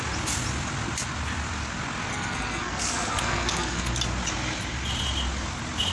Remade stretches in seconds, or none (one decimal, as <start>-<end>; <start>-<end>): 2.1-3.9